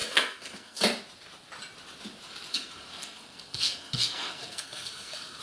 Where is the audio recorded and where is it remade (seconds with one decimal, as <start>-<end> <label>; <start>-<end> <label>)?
0.0-0.8 remade; 0.8-2.5 recorded; 2.5-5.4 remade